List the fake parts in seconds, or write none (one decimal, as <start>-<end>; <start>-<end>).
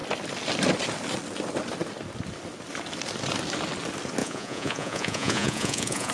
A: 4.2-6.1